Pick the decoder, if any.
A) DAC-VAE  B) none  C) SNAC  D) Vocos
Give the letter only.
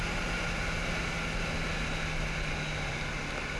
B